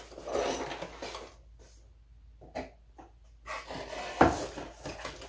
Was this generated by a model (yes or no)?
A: no